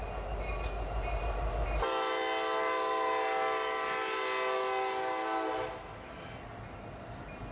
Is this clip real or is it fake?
real